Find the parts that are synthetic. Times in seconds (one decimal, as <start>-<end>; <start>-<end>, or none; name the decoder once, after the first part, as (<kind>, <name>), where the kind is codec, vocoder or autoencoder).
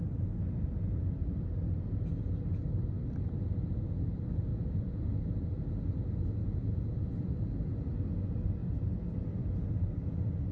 4.5-5.0 (vocoder, Vocos); 6.4-7.3